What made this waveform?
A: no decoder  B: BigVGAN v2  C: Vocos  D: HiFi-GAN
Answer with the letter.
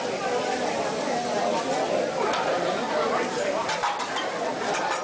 A